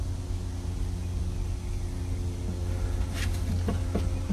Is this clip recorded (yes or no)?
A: yes